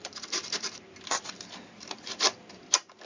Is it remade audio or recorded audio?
recorded